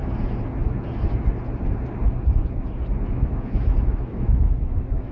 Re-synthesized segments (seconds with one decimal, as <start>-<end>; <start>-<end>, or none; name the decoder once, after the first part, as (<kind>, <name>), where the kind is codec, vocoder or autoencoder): 3.1-5.1 (autoencoder, DAC-VAE)